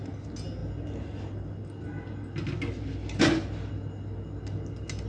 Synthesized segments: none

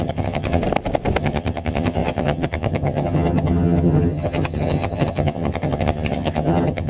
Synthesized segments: 0.0-0.6; 1.2-6.9

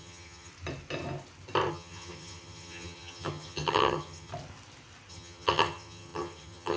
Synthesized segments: 0.0-0.5; 1.7-4.3; 5.1-6.8